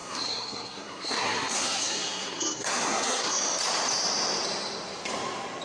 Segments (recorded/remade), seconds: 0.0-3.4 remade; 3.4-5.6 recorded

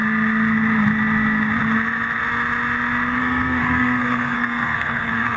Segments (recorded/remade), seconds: 0.0-3.2 recorded; 3.2-5.4 remade

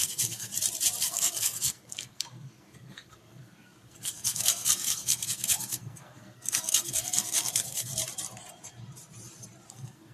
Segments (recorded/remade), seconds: 0.0-0.5 remade; 0.5-1.0 recorded; 1.0-7.9 remade; 7.9-9.7 recorded; 9.7-10.1 remade

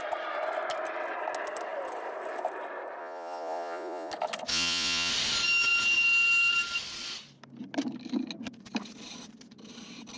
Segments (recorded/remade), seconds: 0.0-3.0 recorded; 3.0-4.1 remade; 4.1-4.5 recorded; 4.5-5.1 remade; 5.1-10.2 recorded

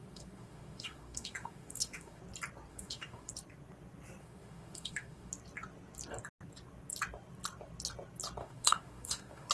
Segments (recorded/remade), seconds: 0.0-2.2 remade; 2.2-2.7 recorded; 2.7-3.3 remade; 3.3-4.2 recorded; 4.2-5.3 remade; 5.3-8.4 recorded; 8.4-9.5 remade